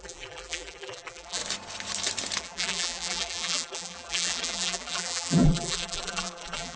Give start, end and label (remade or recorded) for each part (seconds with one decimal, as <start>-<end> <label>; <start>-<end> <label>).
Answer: 0.0-1.4 remade; 1.4-2.4 recorded; 2.4-6.8 remade